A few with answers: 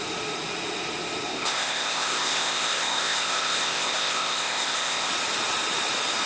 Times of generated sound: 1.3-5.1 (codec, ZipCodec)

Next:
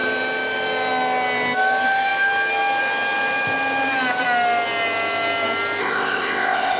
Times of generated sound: 5.8-6.8 (codec, ZipCodec)